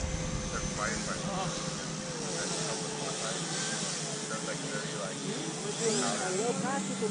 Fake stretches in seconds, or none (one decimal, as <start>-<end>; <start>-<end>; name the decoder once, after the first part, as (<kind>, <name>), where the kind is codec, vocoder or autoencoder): none